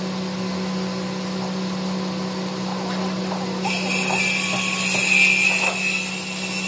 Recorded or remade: recorded